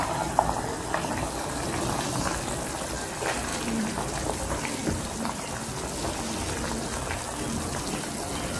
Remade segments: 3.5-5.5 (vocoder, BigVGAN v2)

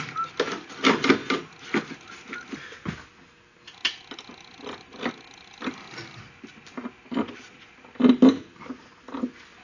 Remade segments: none

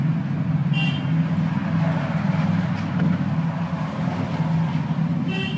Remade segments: none